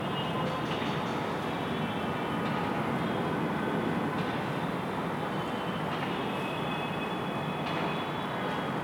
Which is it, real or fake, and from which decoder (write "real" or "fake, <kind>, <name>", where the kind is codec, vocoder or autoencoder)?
real